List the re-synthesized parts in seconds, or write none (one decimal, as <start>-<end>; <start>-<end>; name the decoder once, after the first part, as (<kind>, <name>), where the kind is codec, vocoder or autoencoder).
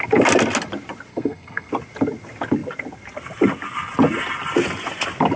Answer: 1.1-1.7 (codec, SNAC)